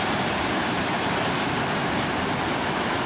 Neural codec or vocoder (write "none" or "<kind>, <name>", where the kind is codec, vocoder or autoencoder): none